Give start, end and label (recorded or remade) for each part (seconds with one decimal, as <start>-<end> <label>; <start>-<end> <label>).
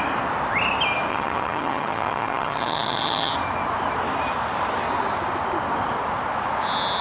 0.0-1.1 recorded; 1.1-3.3 remade; 3.3-7.0 recorded